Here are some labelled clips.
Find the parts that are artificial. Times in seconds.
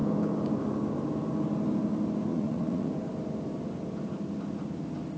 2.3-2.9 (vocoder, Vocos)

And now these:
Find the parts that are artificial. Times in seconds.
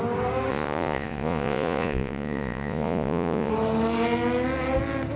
0.5-3.5 (vocoder, Vocos)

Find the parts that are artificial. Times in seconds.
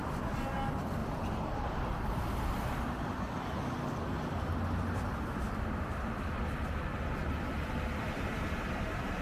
1.0-2.2 (vocoder, BigVGAN v2)